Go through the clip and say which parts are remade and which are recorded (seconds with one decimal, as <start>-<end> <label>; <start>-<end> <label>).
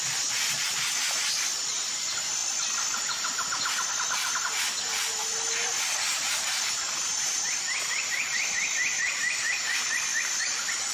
0.0-6.1 recorded; 6.1-8.0 remade; 8.0-10.9 recorded